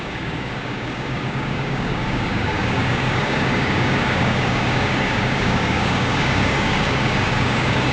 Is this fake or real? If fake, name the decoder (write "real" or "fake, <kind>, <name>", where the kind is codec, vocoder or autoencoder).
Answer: fake, codec, DAC